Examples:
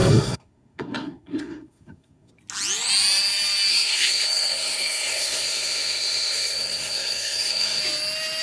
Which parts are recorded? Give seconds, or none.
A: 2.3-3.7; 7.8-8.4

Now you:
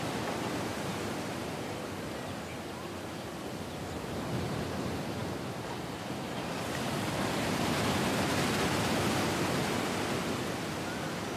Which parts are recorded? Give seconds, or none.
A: 0.0-11.4

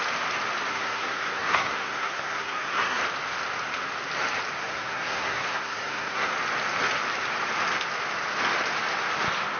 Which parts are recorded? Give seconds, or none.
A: 0.0-0.7; 3.0-4.6; 6.3-9.6

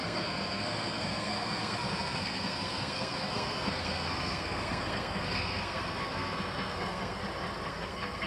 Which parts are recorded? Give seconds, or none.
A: 7.2-7.7

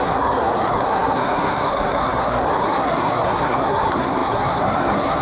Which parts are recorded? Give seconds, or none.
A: none

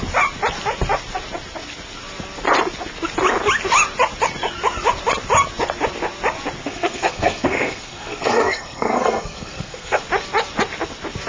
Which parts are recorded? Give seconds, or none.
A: 0.0-6.6; 10.0-11.3

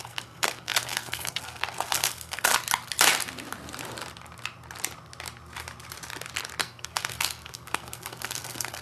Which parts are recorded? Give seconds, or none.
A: 2.5-6.6